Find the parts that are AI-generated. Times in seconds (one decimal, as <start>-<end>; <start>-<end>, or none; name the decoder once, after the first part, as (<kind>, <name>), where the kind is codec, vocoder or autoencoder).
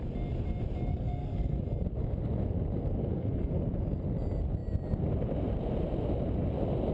0.9-1.6 (codec, SNAC); 3.0-3.5